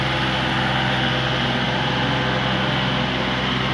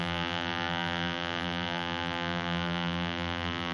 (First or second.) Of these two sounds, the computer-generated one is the second